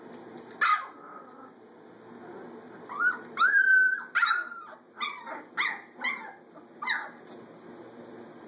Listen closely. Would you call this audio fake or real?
real